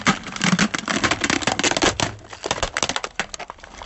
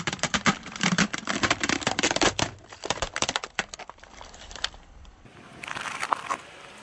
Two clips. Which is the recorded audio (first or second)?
first